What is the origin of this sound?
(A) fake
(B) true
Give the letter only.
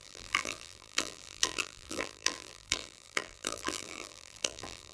A